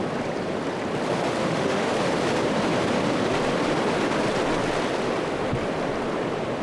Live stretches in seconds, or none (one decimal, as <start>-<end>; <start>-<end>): 0.0-1.4; 1.9-6.6